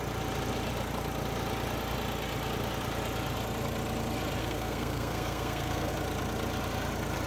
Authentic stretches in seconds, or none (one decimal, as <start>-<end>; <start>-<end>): 0.0-4.4; 5.9-7.3